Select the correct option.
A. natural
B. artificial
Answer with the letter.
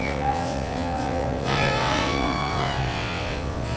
B